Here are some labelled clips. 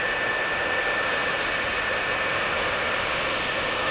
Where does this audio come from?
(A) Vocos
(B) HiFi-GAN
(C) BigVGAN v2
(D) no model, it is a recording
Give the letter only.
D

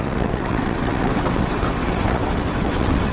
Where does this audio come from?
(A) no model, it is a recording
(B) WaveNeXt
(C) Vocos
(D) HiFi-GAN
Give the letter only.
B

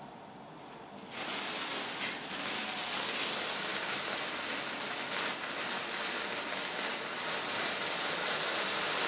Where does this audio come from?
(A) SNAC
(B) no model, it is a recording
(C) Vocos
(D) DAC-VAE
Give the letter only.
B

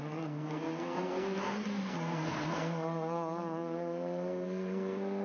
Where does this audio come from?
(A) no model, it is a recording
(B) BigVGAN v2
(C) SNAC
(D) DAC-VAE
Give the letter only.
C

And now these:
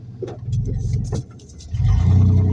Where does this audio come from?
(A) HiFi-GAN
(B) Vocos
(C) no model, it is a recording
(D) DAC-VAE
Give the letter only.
C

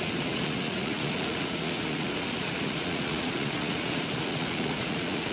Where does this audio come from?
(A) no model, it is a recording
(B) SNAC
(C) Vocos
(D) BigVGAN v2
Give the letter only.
C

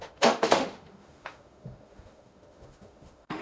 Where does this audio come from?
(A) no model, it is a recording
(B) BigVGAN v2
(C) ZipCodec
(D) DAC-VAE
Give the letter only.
D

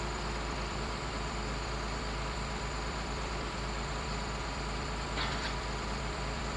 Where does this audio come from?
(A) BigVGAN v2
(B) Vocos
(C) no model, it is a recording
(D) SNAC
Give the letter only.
A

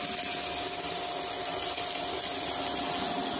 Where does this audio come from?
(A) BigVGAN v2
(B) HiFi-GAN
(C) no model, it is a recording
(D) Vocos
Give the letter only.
C